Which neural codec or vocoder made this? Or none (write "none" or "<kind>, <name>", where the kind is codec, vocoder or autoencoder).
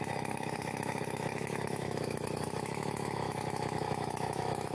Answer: autoencoder, DAC-VAE